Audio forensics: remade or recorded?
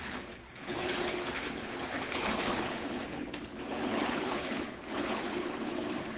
remade